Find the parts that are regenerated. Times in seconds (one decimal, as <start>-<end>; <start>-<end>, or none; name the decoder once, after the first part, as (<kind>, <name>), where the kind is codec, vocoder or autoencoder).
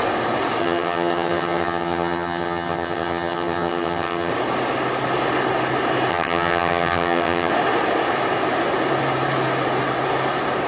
0.6-4.3 (vocoder, HiFi-GAN); 6.1-7.5